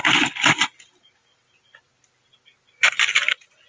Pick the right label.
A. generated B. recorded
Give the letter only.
B